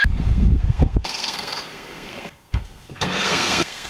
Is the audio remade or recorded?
remade